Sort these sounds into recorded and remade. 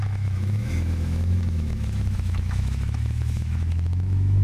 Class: remade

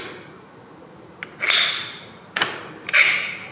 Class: recorded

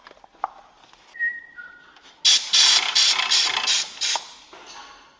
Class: recorded